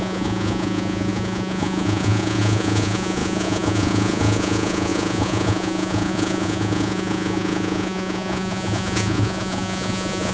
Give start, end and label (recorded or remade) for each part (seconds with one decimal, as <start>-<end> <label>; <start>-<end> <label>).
0.0-10.3 remade